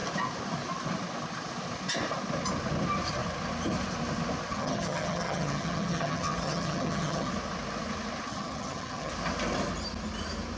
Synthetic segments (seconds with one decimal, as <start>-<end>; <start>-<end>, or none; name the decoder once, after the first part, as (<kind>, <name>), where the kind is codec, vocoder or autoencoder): 4.5-7.3 (vocoder, HiFi-GAN); 8.3-9.1